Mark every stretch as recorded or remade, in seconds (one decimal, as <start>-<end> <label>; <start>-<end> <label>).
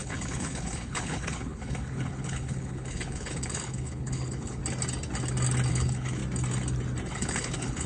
0.0-4.6 remade; 4.6-5.7 recorded; 5.7-6.2 remade; 6.2-7.1 recorded; 7.1-7.9 remade